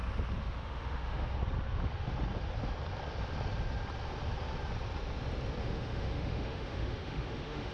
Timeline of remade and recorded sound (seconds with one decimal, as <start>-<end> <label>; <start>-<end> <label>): 0.0-0.5 recorded; 0.5-1.4 remade; 1.4-5.6 recorded; 5.6-7.7 remade